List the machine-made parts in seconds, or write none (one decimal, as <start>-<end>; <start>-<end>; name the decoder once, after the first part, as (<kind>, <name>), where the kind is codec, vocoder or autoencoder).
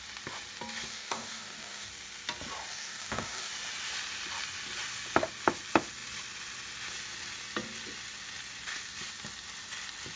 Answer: 0.9-1.9 (codec, DAC); 2.7-3.5